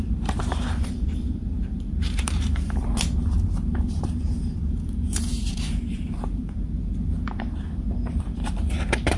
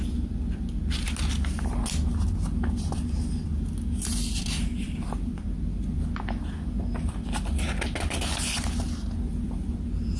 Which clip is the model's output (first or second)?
first